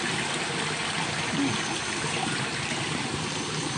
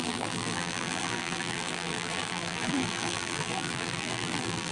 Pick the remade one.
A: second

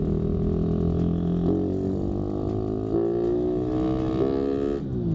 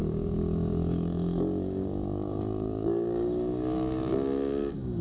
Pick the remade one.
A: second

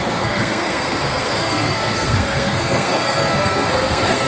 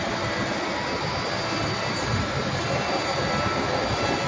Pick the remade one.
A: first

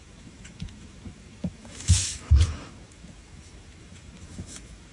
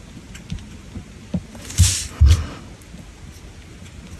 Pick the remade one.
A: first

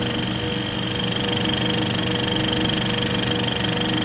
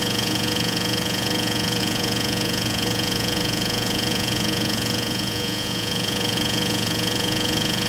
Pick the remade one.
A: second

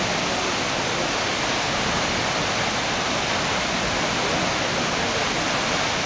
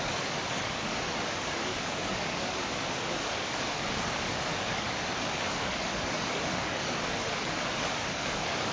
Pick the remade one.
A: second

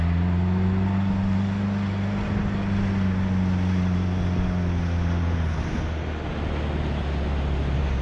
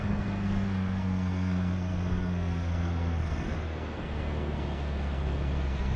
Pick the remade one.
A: second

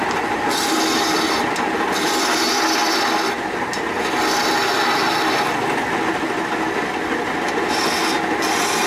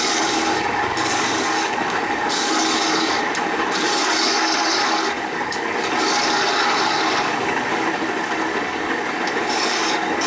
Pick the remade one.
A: second